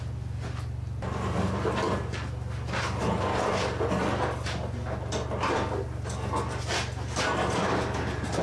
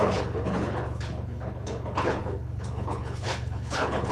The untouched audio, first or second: first